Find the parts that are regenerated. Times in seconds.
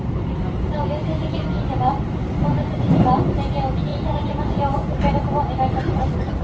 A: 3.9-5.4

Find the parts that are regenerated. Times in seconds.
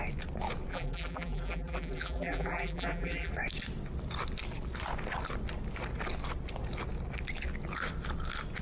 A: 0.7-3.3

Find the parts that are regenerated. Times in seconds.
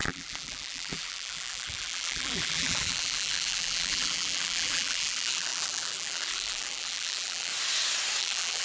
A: 0.0-7.5; 8.2-8.6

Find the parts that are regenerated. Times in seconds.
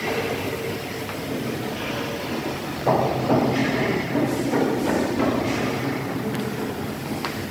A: 3.6-4.7